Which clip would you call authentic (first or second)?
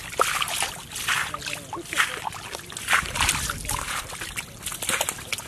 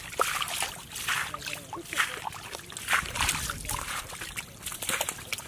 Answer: first